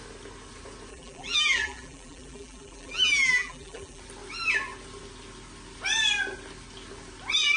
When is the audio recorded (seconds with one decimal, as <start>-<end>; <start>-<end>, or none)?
0.0-0.9; 4.0-7.6